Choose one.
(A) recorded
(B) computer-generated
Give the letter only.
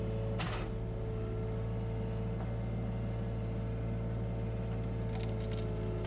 A